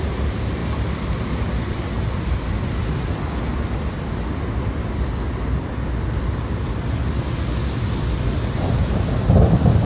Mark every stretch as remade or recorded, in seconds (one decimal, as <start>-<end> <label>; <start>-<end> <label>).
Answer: 0.0-0.6 recorded; 0.6-3.1 remade; 3.1-9.9 recorded